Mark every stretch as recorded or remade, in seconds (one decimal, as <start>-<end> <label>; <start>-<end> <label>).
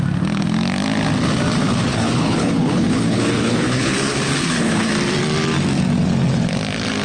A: 0.0-1.6 recorded; 1.6-4.9 remade; 4.9-7.0 recorded